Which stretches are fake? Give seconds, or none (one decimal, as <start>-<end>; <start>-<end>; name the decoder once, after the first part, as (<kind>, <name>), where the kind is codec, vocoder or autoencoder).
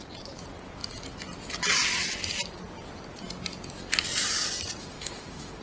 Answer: 4.8-5.6 (autoencoder, DAC-VAE)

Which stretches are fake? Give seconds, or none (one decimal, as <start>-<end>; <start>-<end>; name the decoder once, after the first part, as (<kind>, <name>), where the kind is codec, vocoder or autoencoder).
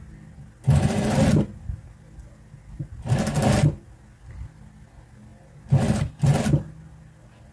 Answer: none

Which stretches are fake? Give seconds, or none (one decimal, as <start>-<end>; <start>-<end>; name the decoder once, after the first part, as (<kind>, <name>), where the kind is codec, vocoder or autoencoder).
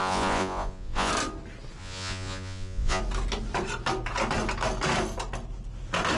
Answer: 0.0-1.1 (vocoder, Vocos); 1.8-3.0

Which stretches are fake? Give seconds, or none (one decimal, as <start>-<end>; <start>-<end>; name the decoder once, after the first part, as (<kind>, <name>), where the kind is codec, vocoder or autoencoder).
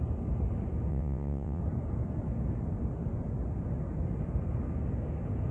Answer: 0.9-1.6 (vocoder, WaveNeXt)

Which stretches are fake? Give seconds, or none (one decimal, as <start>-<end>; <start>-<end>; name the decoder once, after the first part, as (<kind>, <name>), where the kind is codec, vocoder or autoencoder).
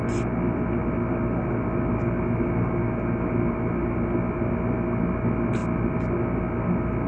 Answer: none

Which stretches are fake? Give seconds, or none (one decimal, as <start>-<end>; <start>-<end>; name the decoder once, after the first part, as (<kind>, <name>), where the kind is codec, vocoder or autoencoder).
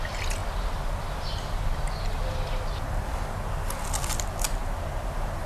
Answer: none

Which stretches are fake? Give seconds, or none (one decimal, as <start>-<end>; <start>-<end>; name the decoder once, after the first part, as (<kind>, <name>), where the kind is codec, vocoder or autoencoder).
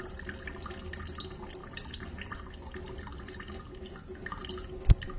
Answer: 1.6-2.4 (vocoder, BigVGAN v2)